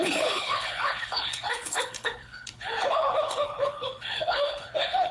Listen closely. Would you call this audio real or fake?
fake